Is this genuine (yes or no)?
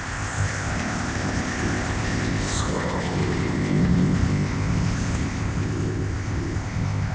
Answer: no